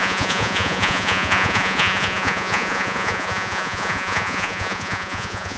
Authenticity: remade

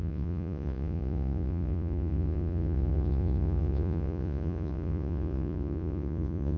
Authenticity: remade